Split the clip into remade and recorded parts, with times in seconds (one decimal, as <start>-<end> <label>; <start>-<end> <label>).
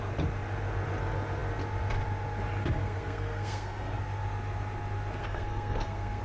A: 0.0-2.6 recorded; 2.6-4.0 remade; 4.0-5.2 recorded; 5.2-6.2 remade